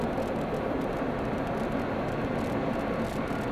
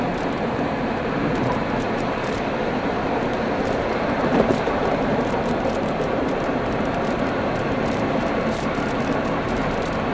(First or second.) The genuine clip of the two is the first